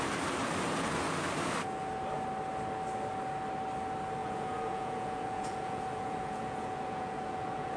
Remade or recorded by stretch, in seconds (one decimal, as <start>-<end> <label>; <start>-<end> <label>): 0.0-4.2 recorded; 4.2-7.8 remade